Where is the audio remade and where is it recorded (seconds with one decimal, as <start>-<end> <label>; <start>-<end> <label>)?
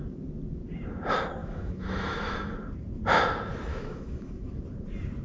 0.0-1.4 recorded; 1.4-2.5 remade; 2.5-3.7 recorded; 3.7-4.6 remade; 4.6-5.2 recorded